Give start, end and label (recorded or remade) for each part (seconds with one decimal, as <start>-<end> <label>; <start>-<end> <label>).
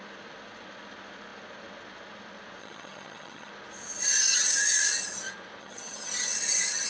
0.0-2.6 recorded; 2.6-3.5 remade; 3.5-5.6 recorded; 5.6-6.1 remade; 6.1-6.9 recorded